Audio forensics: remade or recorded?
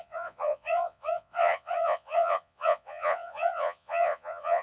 remade